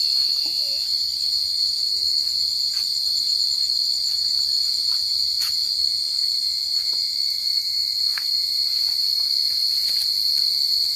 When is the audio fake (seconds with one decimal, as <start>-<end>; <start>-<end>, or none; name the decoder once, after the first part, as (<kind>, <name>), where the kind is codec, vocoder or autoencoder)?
none